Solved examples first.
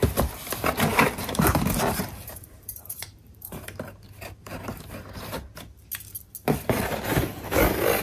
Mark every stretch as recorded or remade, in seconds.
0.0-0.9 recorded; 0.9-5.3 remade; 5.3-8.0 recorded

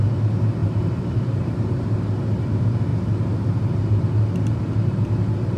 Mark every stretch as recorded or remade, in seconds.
0.0-0.6 recorded; 0.6-2.0 remade; 2.0-5.6 recorded

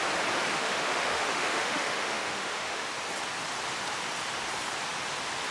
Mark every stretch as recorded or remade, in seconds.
0.0-0.5 recorded; 0.5-2.9 remade; 2.9-5.5 recorded

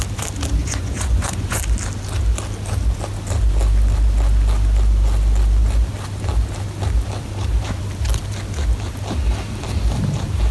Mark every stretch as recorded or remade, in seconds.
0.0-0.6 recorded; 0.6-1.6 remade; 1.6-10.5 recorded